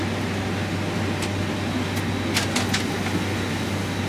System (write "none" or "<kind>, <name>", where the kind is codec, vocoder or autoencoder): none